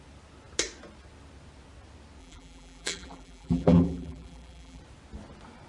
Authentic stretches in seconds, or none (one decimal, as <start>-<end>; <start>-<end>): 0.0-2.2; 4.8-5.7